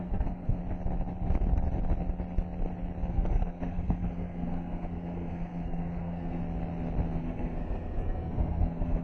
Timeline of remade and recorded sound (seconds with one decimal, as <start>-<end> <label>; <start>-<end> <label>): 0.0-0.6 remade; 0.6-3.1 recorded; 3.1-6.4 remade; 6.4-7.2 recorded; 7.2-9.0 remade